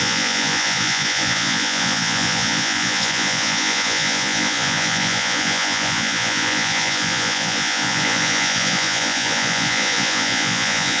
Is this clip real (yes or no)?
no